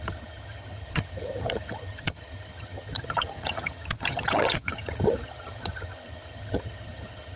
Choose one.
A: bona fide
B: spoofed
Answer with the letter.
B